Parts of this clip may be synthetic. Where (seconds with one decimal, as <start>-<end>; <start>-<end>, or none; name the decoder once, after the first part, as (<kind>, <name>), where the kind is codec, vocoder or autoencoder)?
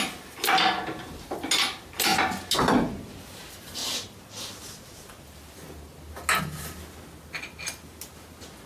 none